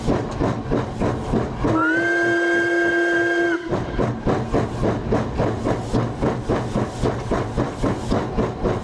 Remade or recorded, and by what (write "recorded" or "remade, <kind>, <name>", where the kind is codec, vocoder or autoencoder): recorded